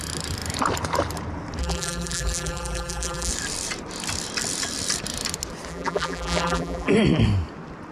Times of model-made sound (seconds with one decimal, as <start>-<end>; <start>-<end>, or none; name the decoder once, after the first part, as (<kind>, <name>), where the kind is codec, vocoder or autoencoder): 1.6-3.3 (vocoder, BigVGAN v2); 5.7-6.9